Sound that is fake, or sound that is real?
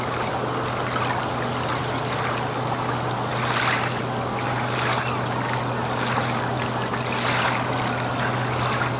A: real